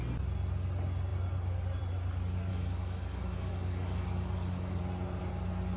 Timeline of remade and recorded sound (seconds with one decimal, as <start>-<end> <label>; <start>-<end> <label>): 0.0-2.5 recorded; 2.5-4.8 remade; 4.8-5.8 recorded

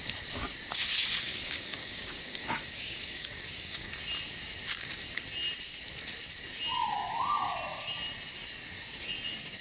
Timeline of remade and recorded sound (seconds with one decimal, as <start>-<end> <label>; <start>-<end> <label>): 0.0-1.3 recorded; 1.3-3.9 remade; 3.9-9.6 recorded

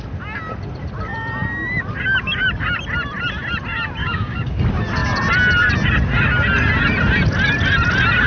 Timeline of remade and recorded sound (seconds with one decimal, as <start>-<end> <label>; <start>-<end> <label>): 0.0-4.0 recorded; 4.0-4.6 remade; 4.6-8.3 recorded

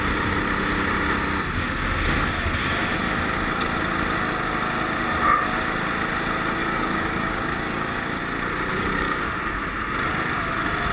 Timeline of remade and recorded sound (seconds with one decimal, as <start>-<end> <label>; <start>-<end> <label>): 0.0-6.6 recorded; 6.6-8.2 remade; 8.2-8.7 recorded; 8.7-9.3 remade; 9.3-10.9 recorded

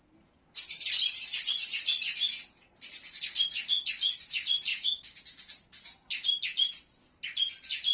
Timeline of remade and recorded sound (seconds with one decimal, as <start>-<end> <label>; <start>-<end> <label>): 0.0-4.7 recorded; 4.7-5.2 remade; 5.2-7.9 recorded

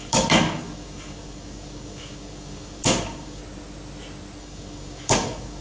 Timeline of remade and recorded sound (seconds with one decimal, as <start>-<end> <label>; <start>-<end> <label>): 0.0-3.4 remade; 3.4-4.4 recorded; 4.4-5.6 remade

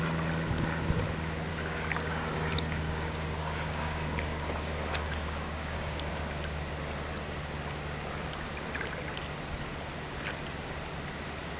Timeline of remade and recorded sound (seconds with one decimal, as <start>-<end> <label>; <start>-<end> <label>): 0.0-1.5 recorded; 1.5-6.1 remade; 6.1-11.6 recorded